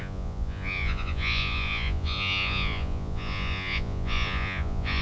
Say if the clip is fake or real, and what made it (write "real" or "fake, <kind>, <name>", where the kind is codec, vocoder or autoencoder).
fake, vocoder, Vocos